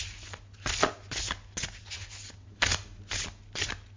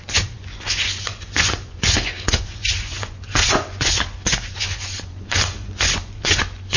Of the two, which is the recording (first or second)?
first